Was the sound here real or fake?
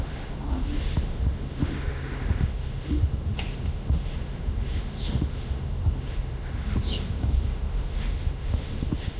fake